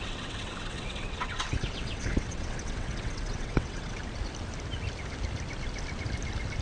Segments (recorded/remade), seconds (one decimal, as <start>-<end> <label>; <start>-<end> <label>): 0.0-4.0 remade; 4.0-6.6 recorded